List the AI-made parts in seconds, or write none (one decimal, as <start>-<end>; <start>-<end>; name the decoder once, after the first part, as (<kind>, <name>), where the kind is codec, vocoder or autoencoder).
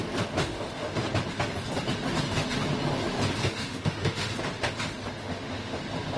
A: 0.4-1.0 (autoencoder, DAC-VAE); 3.4-4.3; 5.2-5.8